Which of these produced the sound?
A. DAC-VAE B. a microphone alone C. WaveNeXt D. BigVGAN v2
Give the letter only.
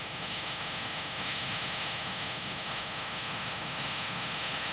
A